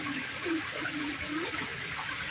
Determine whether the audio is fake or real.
fake